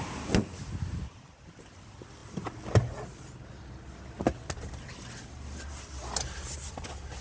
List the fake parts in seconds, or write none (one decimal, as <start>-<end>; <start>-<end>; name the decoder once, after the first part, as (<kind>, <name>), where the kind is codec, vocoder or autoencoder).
none